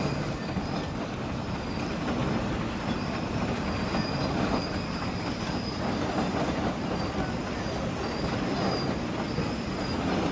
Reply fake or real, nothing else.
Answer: real